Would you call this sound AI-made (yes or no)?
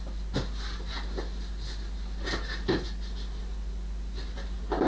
no